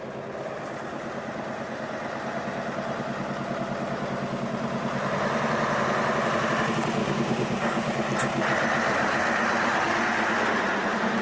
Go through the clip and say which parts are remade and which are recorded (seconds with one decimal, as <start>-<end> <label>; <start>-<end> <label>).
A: 0.0-7.0 recorded; 7.0-7.9 remade; 7.9-11.2 recorded